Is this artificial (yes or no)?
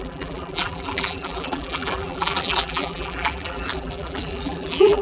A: yes